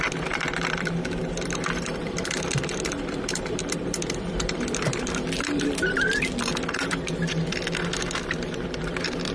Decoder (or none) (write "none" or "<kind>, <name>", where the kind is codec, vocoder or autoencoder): vocoder, BigVGAN v2